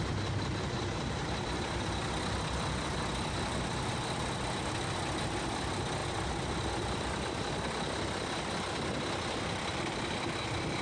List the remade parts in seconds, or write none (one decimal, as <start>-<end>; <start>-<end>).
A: none